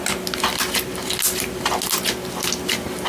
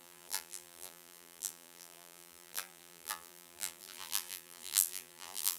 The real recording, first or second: first